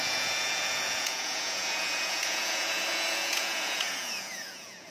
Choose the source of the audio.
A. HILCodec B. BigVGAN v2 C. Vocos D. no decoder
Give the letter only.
C